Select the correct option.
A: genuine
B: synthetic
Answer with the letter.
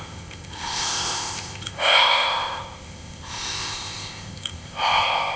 B